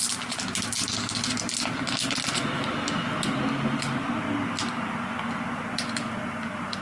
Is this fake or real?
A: real